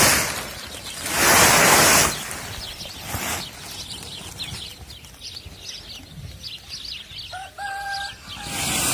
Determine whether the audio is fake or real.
real